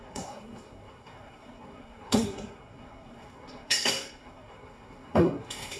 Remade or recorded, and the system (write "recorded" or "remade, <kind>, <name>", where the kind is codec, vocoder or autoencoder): remade, codec, SNAC